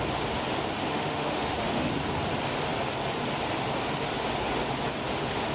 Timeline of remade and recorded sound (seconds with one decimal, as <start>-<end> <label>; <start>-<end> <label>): 0.0-0.9 recorded; 0.9-1.9 remade; 1.9-5.5 recorded

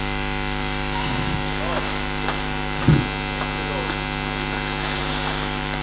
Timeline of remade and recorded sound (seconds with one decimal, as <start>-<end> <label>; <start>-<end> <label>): 0.0-2.9 remade; 2.9-5.0 recorded; 5.0-5.8 remade

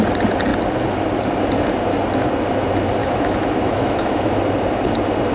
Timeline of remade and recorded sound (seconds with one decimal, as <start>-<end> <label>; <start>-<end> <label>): 0.0-3.0 recorded; 3.0-4.4 remade; 4.4-5.3 recorded

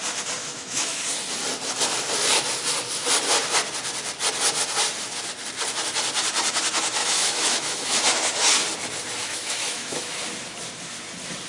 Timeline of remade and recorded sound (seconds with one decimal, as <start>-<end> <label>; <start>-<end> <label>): 0.0-0.4 recorded; 0.4-1.0 remade; 1.0-7.0 recorded; 7.0-8.0 remade; 8.0-9.2 recorded; 9.2-10.2 remade; 10.2-11.5 recorded

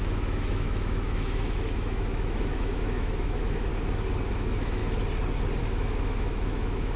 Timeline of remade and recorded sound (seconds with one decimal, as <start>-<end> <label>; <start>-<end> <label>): 0.0-3.7 remade; 3.7-4.3 recorded; 4.3-4.8 remade; 4.8-5.6 recorded; 5.6-7.0 remade

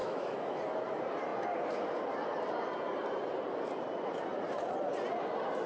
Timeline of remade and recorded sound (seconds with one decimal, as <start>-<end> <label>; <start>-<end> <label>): 0.0-0.6 remade; 0.6-5.7 recorded